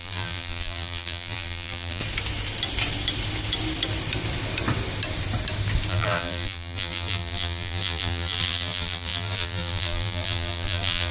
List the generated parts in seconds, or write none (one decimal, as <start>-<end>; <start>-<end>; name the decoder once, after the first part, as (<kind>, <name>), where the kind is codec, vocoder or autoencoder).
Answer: 0.0-2.0 (vocoder, BigVGAN v2); 5.9-11.1